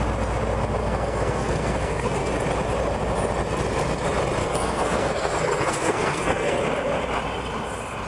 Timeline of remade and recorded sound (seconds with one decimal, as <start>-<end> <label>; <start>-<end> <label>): 0.0-0.8 recorded; 0.8-2.3 remade; 2.3-4.4 recorded; 4.4-6.6 remade; 6.6-8.1 recorded